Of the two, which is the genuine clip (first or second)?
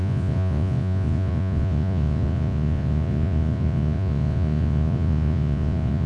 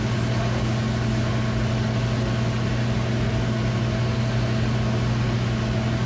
second